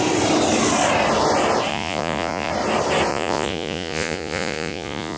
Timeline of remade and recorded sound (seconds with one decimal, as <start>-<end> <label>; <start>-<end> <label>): 0.0-1.7 recorded; 1.7-2.5 remade; 2.5-3.1 recorded; 3.1-5.2 remade